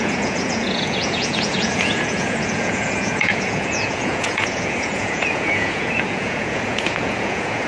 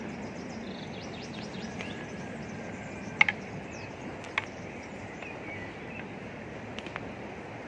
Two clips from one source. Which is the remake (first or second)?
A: first